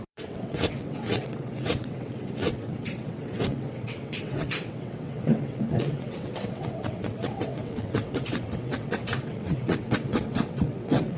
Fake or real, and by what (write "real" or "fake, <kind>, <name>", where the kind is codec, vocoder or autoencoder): fake, vocoder, WaveNeXt